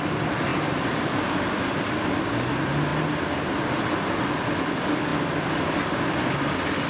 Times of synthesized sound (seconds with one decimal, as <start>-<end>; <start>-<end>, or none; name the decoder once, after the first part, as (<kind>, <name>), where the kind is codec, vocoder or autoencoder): none